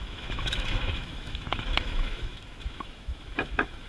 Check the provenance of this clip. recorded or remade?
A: remade